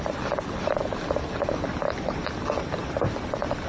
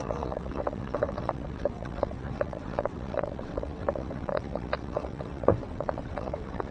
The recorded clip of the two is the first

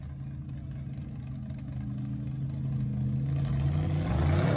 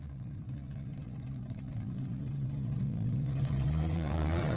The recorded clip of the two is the first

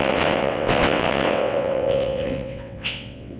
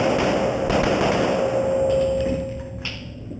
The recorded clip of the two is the second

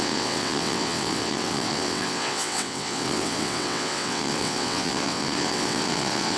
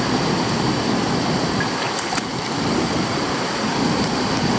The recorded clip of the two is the second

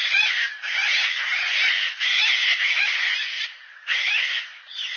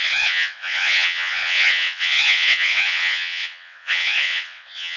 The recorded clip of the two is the first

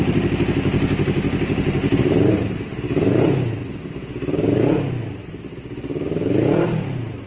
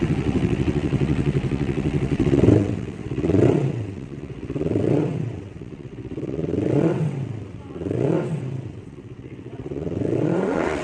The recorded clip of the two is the first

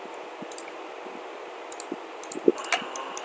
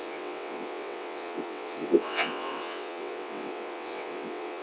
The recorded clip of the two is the first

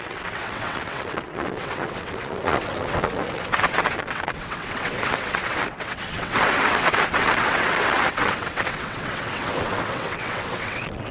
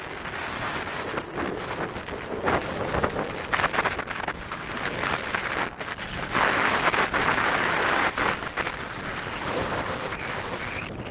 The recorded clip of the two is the second